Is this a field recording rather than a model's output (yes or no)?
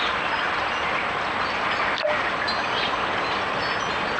yes